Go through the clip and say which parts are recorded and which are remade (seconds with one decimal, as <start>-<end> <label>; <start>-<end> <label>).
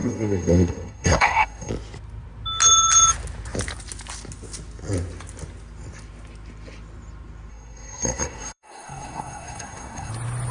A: 0.0-1.7 remade; 1.7-7.5 recorded; 7.5-10.1 remade; 10.1-10.5 recorded